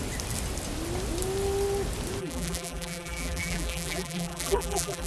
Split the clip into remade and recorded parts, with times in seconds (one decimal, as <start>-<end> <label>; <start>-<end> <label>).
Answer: 0.0-2.2 recorded; 2.2-5.1 remade